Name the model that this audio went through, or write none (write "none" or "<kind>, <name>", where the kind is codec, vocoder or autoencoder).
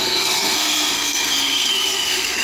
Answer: codec, SNAC